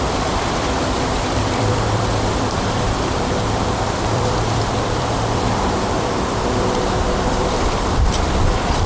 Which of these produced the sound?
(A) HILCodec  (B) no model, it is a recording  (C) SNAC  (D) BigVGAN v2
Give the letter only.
D